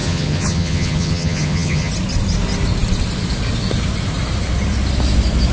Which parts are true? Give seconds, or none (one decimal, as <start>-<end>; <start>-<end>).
1.9-5.5